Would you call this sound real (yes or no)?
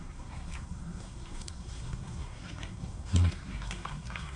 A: no